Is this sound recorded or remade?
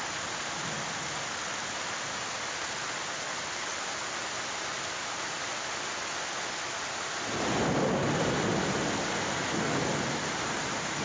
recorded